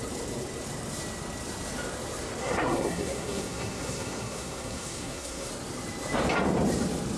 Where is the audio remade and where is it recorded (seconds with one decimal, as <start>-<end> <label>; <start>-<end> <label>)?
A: 0.0-2.4 recorded; 2.4-5.5 remade; 5.5-7.2 recorded